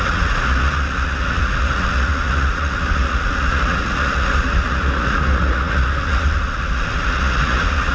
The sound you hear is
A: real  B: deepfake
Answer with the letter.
B